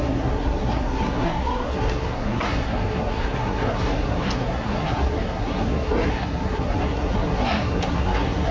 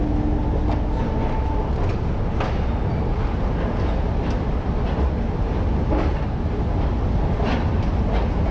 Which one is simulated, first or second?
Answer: first